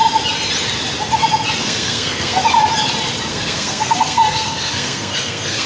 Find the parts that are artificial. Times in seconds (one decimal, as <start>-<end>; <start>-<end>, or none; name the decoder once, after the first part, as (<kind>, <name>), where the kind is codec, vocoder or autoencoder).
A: 1.6-2.4 (codec, SNAC); 3.3-5.7